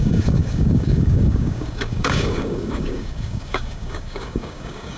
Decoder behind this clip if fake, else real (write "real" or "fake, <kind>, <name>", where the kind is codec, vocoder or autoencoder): fake, codec, DAC